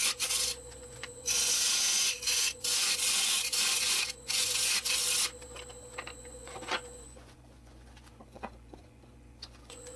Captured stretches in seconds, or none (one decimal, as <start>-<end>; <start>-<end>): 5.0-6.2